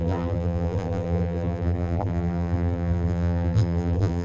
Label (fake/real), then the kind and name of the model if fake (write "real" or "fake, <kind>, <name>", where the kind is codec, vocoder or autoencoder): fake, vocoder, BigVGAN v2